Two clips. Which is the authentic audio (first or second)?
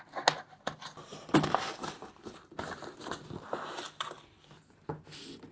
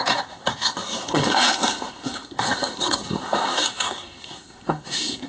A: first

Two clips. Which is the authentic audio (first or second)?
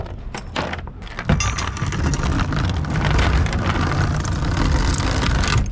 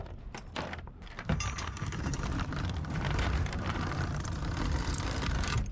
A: first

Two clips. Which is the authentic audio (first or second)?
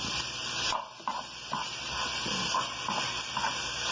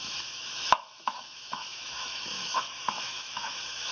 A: first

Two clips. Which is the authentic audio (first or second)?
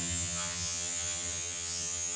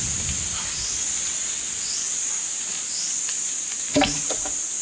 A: second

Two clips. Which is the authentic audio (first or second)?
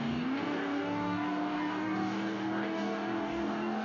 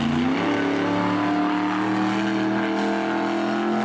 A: second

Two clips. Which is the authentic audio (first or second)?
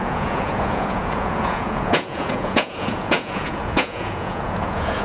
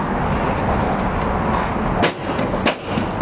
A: second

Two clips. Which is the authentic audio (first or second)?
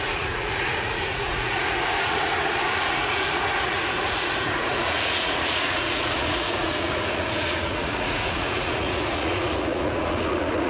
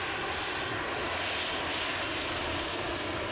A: second